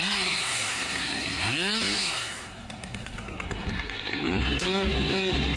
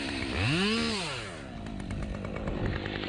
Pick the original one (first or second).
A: second